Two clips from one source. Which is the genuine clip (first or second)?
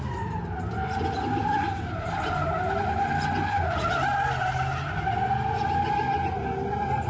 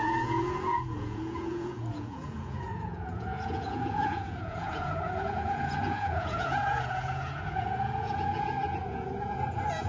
first